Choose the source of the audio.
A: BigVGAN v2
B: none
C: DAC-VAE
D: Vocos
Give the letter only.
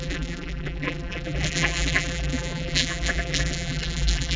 A